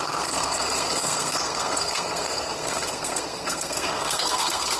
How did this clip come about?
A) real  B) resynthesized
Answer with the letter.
B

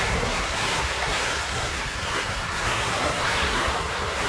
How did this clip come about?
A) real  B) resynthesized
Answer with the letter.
B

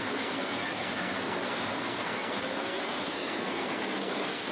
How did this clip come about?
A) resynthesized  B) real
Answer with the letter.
A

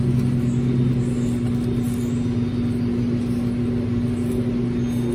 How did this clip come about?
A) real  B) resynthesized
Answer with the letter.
A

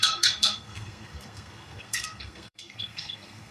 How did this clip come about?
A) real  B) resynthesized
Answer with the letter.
B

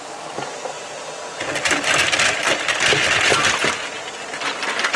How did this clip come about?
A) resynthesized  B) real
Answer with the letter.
B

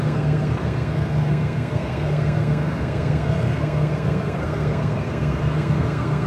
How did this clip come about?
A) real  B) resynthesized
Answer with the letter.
B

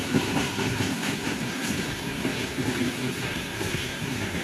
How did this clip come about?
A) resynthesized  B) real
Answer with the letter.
A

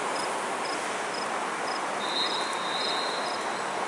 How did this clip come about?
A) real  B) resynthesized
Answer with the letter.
A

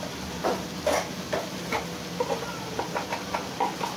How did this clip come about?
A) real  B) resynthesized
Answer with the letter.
A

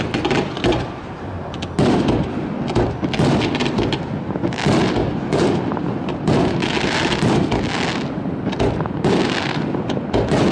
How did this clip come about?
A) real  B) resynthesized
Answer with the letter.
A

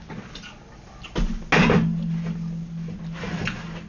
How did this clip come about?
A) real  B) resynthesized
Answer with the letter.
A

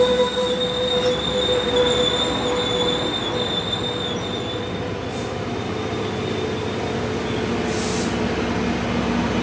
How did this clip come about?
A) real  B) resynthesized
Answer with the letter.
A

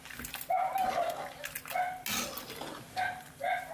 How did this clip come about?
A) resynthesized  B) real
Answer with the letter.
B